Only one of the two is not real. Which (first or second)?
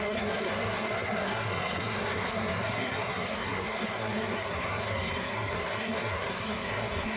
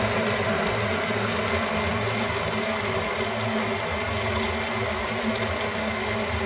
first